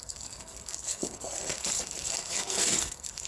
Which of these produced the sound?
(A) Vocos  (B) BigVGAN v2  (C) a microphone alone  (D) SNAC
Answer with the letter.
D